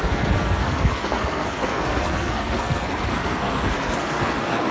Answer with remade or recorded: remade